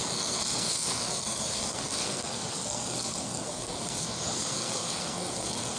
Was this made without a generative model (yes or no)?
no